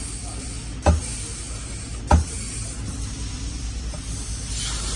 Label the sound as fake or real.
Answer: real